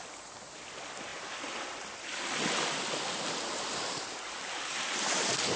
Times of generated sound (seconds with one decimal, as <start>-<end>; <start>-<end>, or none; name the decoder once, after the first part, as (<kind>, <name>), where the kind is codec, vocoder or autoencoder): none